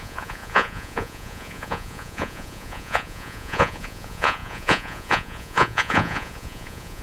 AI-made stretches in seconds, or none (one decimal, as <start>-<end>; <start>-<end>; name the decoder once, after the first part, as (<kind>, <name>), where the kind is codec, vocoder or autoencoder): 0.0-7.0 (vocoder, Vocos)

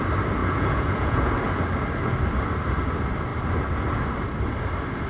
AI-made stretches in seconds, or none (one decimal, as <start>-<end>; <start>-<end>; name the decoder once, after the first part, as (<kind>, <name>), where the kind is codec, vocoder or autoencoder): 0.4-1.3 (vocoder, Vocos)

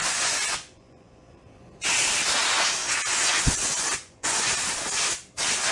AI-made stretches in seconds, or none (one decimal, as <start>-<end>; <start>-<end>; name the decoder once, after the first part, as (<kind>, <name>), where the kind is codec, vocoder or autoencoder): 0.0-1.8 (vocoder, Vocos); 2.8-4.5

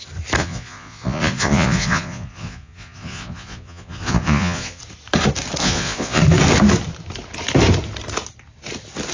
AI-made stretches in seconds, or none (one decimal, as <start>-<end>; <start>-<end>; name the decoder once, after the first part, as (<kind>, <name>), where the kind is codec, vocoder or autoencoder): 0.4-4.8 (vocoder, Vocos); 5.6-6.2

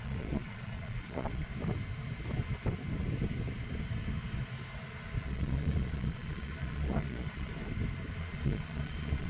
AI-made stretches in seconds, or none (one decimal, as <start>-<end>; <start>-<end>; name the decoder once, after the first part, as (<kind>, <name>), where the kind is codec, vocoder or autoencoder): 0.0-1.5 (vocoder, Vocos); 5.2-7.5; 8.2-9.3